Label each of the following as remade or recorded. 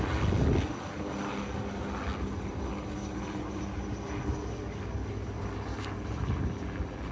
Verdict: recorded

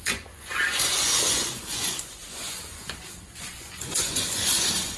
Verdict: remade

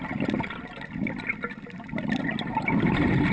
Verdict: recorded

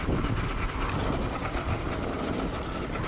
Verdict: recorded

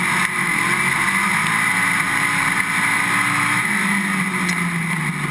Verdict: recorded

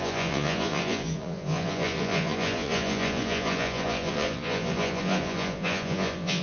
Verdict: remade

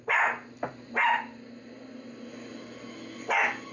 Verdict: recorded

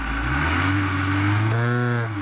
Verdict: recorded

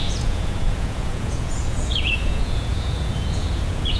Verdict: remade